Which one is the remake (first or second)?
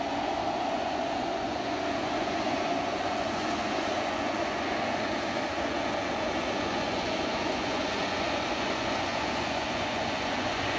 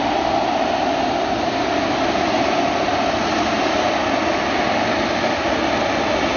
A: first